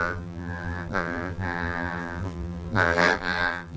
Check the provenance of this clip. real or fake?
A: fake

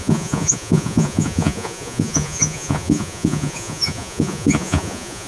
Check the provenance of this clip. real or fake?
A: fake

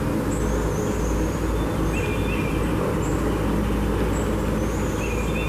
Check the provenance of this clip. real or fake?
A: real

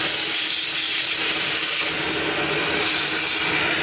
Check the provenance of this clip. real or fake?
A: real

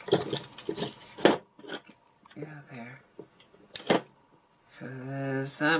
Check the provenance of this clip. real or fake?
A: real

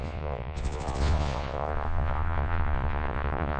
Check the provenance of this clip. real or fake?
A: fake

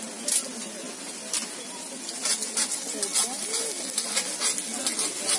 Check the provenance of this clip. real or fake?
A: real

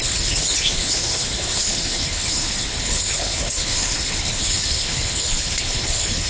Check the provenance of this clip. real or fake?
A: fake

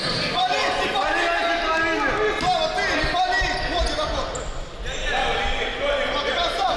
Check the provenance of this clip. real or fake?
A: real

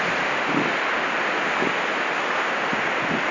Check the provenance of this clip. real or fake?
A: real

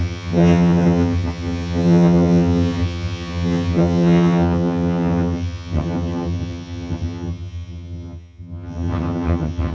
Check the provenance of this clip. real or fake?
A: fake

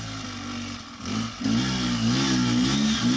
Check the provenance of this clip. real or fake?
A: real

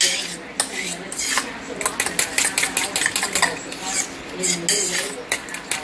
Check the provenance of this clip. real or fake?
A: real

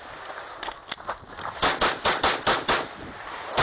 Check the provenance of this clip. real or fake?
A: real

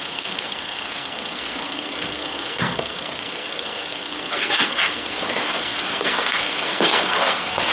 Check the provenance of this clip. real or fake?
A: fake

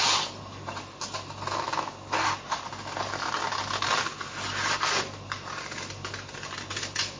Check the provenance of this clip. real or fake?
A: real